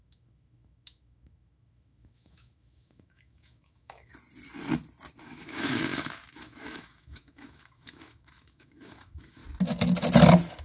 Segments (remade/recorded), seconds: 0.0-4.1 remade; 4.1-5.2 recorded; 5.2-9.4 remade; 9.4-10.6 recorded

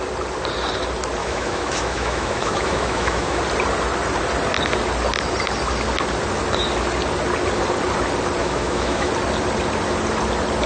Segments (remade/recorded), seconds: 0.0-1.2 recorded; 1.2-3.4 remade; 3.4-8.4 recorded; 8.4-9.1 remade; 9.1-10.7 recorded

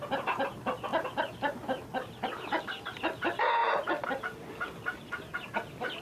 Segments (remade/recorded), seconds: 0.0-6.0 recorded

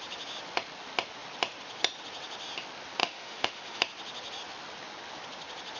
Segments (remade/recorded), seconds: 0.0-3.0 recorded; 3.0-3.8 remade; 3.8-5.8 recorded

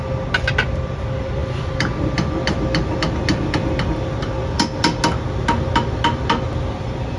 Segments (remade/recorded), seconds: 0.0-7.2 recorded

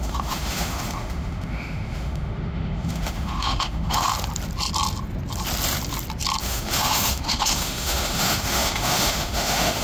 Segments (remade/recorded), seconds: 0.0-4.1 remade; 4.1-6.4 recorded; 6.4-9.8 remade

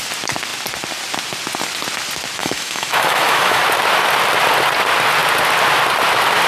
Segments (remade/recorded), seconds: 0.0-2.4 recorded; 2.4-3.6 remade; 3.6-6.5 recorded

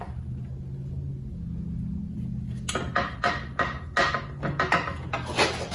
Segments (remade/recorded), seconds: 0.0-5.7 recorded